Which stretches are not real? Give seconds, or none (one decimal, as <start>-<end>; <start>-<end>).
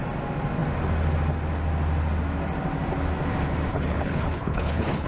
3.7-5.1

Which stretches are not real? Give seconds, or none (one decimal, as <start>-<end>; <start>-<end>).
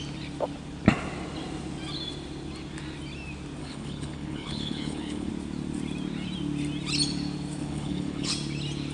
3.6-5.3; 7.6-8.3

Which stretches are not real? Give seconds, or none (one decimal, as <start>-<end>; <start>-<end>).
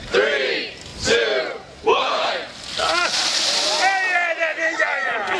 1.8-2.3